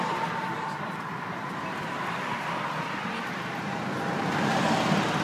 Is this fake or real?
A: real